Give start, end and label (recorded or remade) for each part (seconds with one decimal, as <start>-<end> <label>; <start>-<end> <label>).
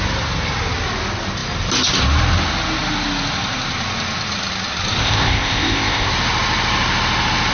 0.0-5.0 recorded; 5.0-6.1 remade; 6.1-7.5 recorded